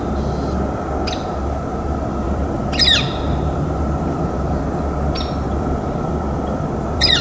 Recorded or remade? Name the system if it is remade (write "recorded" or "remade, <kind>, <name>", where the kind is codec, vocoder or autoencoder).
remade, vocoder, BigVGAN v2